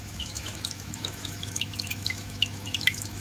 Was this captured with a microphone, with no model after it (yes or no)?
no